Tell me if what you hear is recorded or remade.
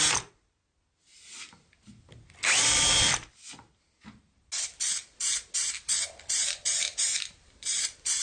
recorded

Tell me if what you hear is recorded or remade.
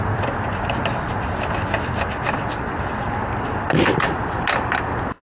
recorded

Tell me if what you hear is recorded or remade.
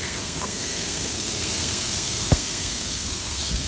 remade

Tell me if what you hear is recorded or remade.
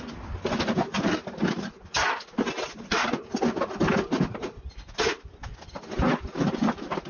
recorded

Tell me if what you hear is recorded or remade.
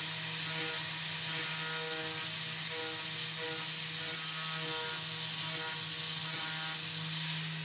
recorded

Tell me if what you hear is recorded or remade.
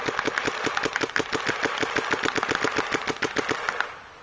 recorded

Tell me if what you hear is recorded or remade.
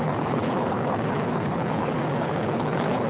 remade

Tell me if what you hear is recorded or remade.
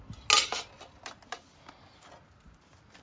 recorded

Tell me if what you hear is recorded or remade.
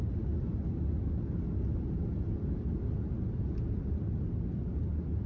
recorded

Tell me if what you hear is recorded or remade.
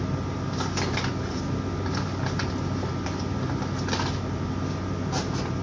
recorded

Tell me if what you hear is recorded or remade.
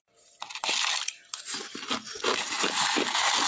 recorded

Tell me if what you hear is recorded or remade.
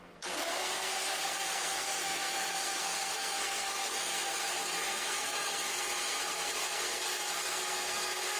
remade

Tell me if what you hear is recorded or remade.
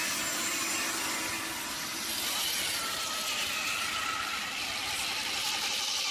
recorded